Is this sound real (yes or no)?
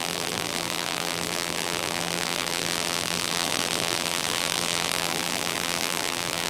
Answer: no